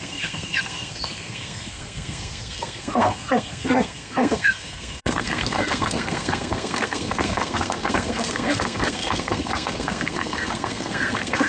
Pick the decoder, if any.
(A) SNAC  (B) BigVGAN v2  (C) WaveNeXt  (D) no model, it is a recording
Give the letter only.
A